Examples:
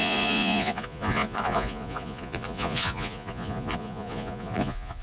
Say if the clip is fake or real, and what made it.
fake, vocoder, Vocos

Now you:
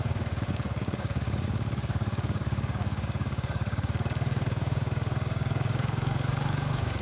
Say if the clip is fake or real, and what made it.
fake, codec, DAC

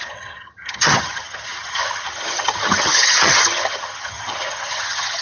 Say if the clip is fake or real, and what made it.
fake, vocoder, HiFi-GAN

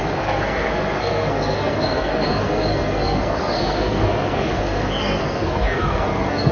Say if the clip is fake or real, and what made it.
fake, codec, SNAC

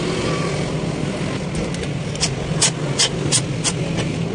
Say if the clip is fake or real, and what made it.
real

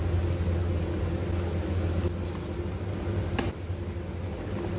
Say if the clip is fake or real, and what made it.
real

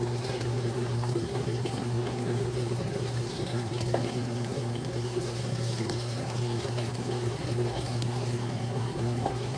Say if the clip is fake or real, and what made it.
fake, codec, SNAC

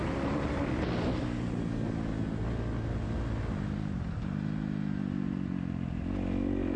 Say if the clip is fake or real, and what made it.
real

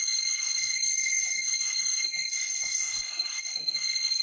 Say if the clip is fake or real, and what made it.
fake, codec, SNAC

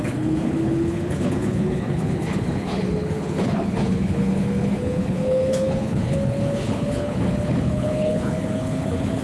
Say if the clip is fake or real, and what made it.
fake, codec, HILCodec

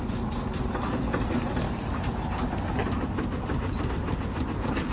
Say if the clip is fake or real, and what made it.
real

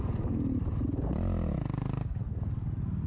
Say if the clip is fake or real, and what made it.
real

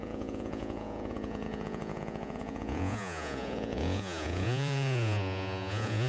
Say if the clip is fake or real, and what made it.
fake, vocoder, Vocos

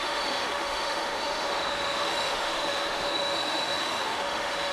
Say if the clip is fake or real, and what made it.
fake, autoencoder, DAC-VAE